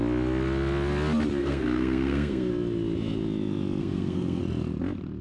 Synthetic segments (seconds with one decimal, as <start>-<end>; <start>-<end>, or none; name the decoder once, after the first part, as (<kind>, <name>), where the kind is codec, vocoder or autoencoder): 1.4-2.5 (codec, SNAC); 3.8-4.4